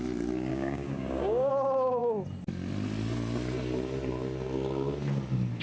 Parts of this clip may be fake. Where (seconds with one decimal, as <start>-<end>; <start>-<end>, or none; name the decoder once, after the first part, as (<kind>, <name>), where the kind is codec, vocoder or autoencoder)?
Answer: 0.5-1.5 (codec, DAC)